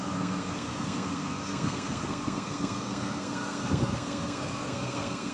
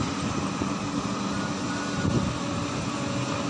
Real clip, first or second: second